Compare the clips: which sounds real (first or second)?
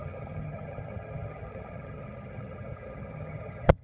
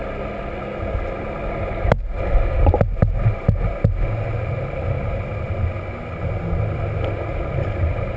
second